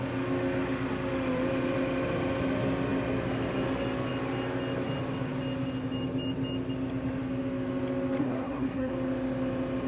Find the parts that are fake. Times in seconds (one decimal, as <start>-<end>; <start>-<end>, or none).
8.2-8.9